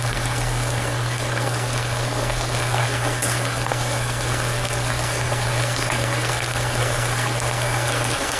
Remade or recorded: remade